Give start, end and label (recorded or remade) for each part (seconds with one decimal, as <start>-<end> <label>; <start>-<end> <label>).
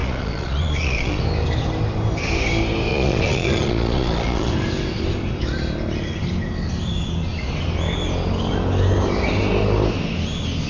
0.0-1.2 remade; 1.2-2.9 recorded; 2.9-4.5 remade; 4.5-10.7 recorded